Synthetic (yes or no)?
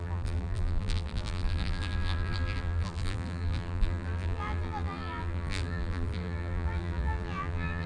yes